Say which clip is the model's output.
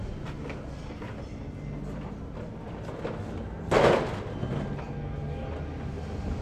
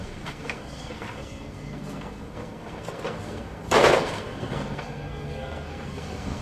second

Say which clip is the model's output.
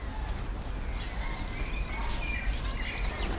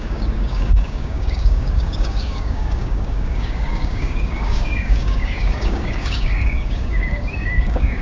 second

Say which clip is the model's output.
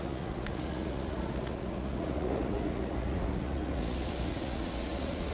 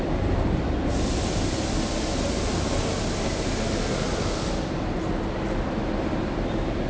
first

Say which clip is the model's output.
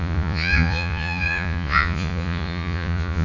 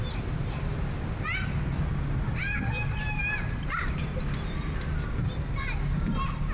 first